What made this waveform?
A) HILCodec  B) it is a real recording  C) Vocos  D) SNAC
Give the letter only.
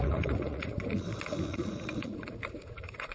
C